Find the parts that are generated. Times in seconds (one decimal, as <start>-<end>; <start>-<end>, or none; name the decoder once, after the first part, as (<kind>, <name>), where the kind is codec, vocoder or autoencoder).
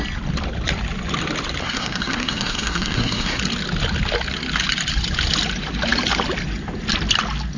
1.6-3.4 (codec, SNAC)